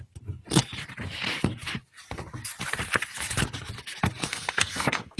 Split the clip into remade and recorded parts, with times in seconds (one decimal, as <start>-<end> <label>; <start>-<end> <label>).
0.0-4.2 recorded; 4.2-5.2 remade